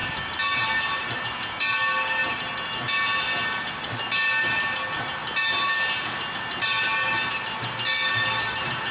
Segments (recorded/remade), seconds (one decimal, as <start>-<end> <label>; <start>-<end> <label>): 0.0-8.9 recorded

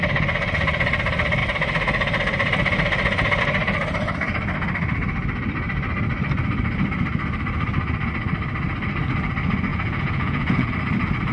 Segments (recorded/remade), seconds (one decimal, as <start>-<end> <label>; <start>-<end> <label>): 0.0-9.7 recorded; 9.7-10.7 remade; 10.7-11.3 recorded

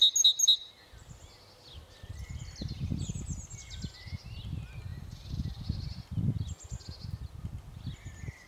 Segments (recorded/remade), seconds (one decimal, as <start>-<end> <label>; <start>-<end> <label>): 0.0-4.9 recorded; 4.9-5.6 remade; 5.6-8.5 recorded

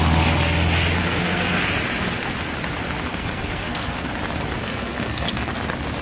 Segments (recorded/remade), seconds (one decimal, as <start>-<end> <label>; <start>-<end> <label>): 0.0-1.0 recorded; 1.0-1.7 remade; 1.7-3.1 recorded; 3.1-4.1 remade; 4.1-4.6 recorded; 4.6-5.5 remade; 5.5-6.0 recorded

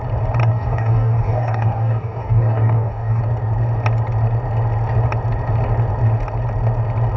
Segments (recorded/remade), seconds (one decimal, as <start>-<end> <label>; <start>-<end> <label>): 0.0-0.4 recorded; 0.4-3.2 remade; 3.2-7.2 recorded

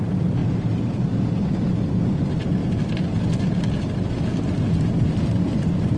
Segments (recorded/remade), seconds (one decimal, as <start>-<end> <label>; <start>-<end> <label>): 0.0-2.6 recorded; 2.6-4.2 remade; 4.2-5.5 recorded; 5.5-6.0 remade